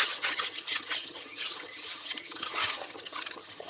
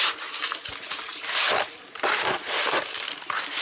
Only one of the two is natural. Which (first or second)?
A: second